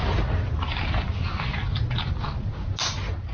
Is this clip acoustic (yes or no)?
yes